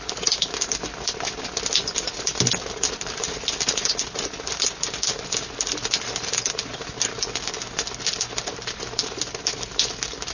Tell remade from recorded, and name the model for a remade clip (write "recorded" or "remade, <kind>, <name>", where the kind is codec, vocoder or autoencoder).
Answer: recorded